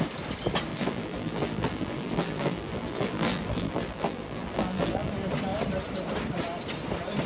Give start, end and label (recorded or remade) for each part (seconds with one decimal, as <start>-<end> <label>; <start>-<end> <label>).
0.0-0.7 recorded; 0.7-5.1 remade; 5.1-7.3 recorded